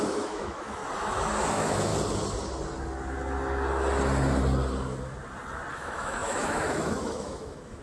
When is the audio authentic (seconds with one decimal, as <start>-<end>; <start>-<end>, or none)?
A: 0.8-1.5; 1.9-5.7